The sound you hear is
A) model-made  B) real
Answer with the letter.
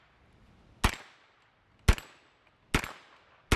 B